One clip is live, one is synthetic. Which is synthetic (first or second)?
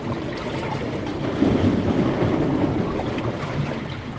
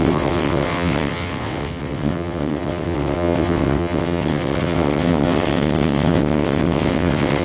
second